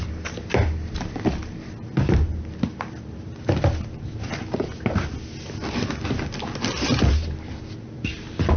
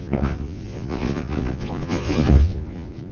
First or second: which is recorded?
first